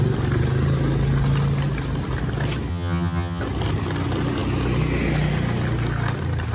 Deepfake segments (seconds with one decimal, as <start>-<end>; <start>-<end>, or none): 2.7-3.4